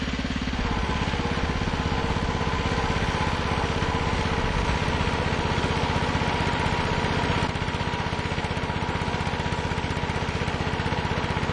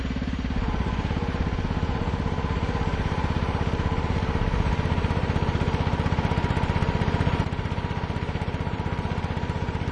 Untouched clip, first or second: first